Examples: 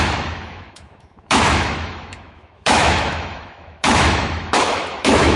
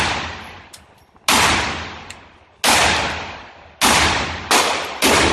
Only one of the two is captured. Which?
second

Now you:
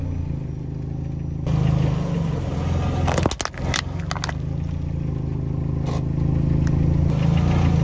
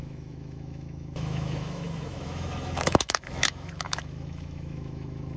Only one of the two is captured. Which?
first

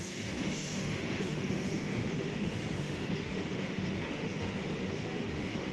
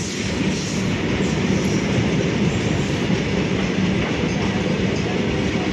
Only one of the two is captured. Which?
second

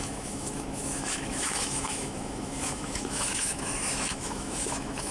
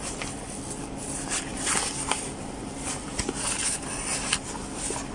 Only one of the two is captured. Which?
second